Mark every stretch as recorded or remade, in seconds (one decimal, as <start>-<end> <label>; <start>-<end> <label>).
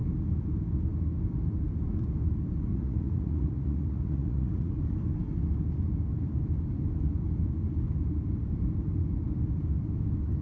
0.0-2.7 recorded; 2.7-4.7 remade; 4.7-10.4 recorded